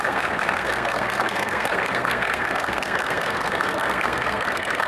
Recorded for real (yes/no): no